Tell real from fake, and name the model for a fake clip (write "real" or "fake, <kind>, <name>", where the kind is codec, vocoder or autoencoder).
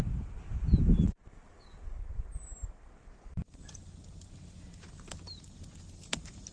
real